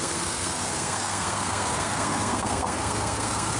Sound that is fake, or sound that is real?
fake